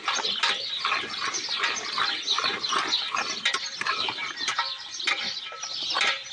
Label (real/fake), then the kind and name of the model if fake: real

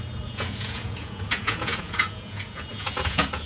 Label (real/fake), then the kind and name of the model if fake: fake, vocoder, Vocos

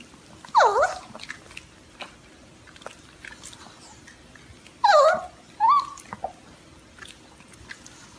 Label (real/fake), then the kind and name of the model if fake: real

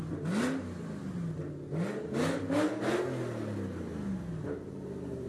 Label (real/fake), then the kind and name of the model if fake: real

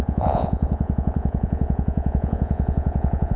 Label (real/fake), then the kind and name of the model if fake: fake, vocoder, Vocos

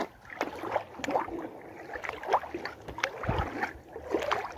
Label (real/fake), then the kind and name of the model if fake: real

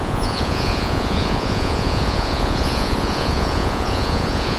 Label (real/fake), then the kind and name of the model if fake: fake, vocoder, Vocos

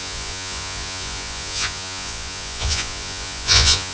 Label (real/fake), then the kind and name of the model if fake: fake, vocoder, Vocos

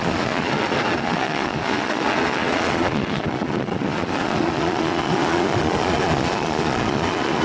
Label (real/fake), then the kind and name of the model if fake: fake, vocoder, Vocos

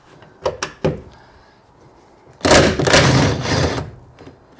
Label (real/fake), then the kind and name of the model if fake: real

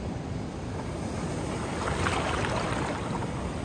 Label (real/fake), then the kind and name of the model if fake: real